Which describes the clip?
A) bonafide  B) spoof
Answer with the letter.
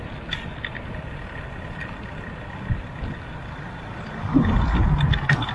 A